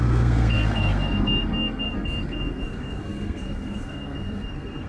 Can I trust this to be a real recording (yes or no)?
no